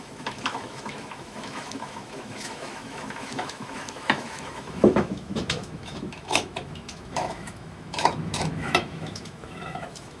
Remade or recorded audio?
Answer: remade